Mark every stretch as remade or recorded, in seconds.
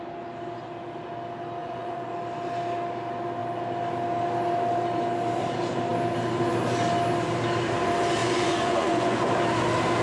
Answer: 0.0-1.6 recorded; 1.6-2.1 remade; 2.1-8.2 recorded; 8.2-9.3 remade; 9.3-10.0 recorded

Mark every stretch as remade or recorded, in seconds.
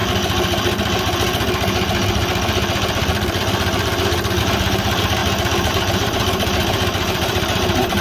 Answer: 0.0-4.4 recorded; 4.4-5.2 remade; 5.2-5.7 recorded; 5.7-8.0 remade